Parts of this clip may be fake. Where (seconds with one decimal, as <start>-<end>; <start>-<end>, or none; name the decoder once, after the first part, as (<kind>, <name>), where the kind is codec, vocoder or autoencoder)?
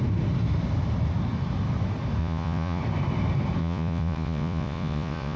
2.2-2.8 (vocoder, Vocos); 3.6-5.4